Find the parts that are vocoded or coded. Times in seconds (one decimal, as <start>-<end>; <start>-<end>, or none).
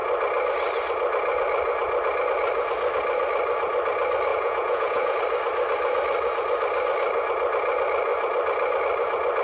4.3-5.2